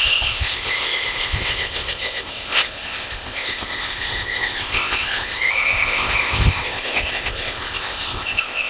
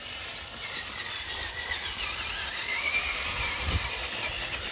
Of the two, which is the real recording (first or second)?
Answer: second